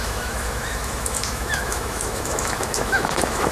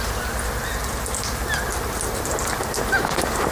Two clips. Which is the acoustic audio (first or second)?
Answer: second